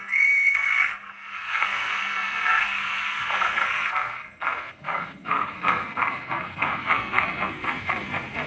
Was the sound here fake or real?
fake